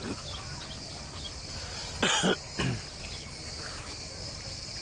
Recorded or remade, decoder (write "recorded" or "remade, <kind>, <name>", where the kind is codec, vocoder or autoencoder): recorded